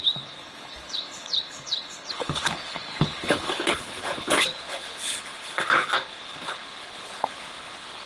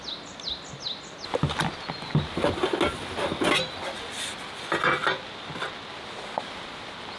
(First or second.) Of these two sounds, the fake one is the first